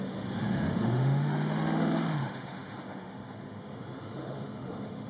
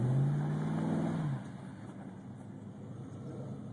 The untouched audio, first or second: second